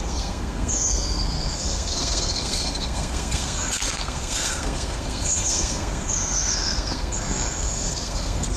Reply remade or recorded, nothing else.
remade